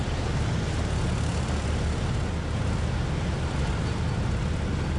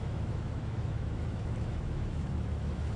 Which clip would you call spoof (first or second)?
second